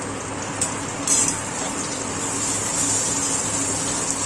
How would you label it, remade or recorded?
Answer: recorded